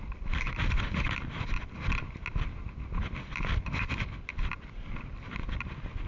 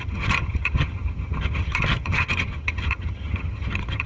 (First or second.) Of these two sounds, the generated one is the second